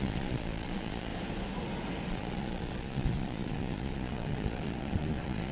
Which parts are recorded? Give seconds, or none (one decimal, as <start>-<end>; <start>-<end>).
1.1-2.1